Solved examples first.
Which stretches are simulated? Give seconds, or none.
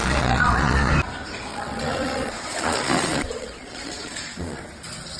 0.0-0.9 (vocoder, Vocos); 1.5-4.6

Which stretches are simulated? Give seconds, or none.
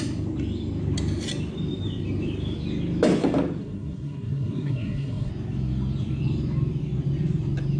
3.6-5.3 (codec, SNAC)